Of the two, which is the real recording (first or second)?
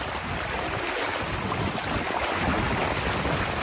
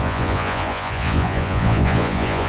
first